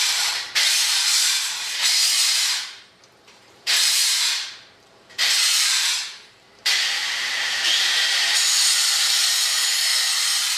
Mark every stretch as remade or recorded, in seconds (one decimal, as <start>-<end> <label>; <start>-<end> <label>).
0.0-9.9 remade; 9.9-10.6 recorded